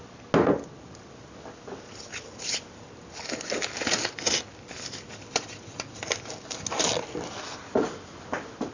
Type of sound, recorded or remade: recorded